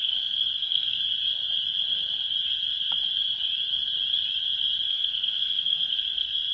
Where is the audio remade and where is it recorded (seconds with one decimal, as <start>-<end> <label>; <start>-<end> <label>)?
0.0-1.0 remade; 1.0-4.9 recorded; 4.9-6.5 remade